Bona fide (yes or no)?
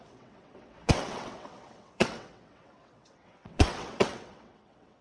no